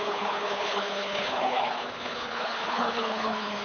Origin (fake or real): fake